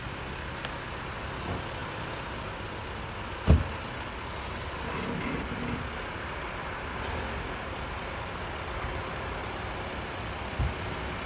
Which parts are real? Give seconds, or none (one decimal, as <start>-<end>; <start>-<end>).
0.0-11.3